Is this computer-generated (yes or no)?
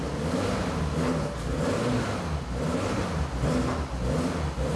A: no